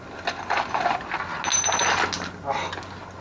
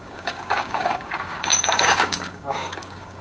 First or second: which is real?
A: first